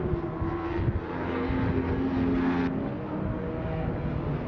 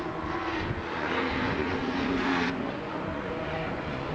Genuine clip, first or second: first